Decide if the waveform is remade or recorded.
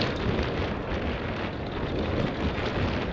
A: recorded